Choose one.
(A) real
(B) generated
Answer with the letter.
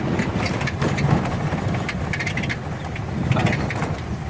A